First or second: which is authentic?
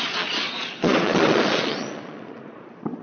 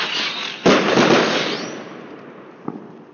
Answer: second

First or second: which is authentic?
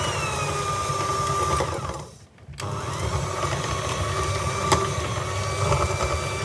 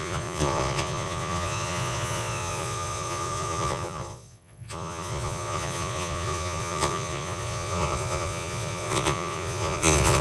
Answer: first